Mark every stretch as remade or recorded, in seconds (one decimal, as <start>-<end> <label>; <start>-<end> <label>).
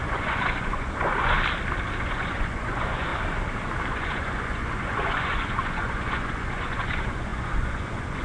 0.0-1.4 remade; 1.4-2.0 recorded; 2.0-3.1 remade; 3.1-3.9 recorded; 3.9-8.2 remade